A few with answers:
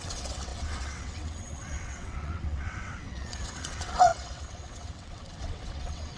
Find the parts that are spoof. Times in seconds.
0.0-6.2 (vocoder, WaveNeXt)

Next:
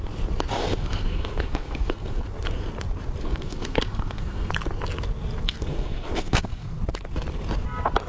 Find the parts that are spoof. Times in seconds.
0.6-2.2 (codec, SNAC); 3.2-4.5; 5.5-6.8

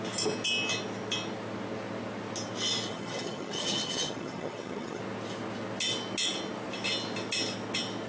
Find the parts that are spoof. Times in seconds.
2.9-5.0 (vocoder, HiFi-GAN)

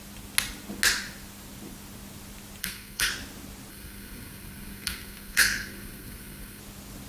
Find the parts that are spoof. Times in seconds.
2.6-3.1 (codec, SNAC); 3.7-6.6

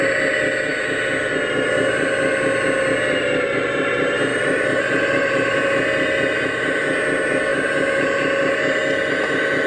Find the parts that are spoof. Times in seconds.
4.3-5.6 (vocoder, BigVGAN v2)